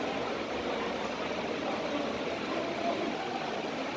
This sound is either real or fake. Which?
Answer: real